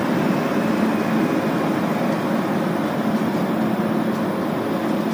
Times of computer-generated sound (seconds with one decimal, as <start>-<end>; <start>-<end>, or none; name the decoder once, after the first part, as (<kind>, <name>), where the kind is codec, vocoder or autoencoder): 1.7-5.1 (vocoder, BigVGAN v2)